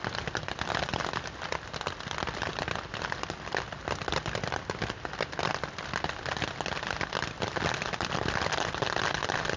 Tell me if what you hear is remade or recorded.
recorded